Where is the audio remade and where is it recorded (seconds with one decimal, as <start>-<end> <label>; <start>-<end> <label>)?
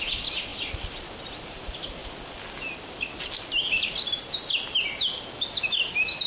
0.0-6.3 recorded